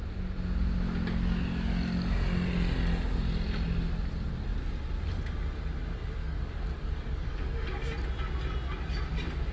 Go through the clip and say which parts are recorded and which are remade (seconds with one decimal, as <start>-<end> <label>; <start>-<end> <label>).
0.0-6.2 recorded; 6.2-7.8 remade; 7.8-9.5 recorded